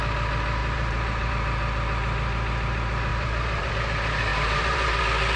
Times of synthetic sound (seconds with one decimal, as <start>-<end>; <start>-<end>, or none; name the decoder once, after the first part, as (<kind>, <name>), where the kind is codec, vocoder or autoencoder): 0.6-1.3 (vocoder, BigVGAN v2); 3.1-3.7; 4.3-5.0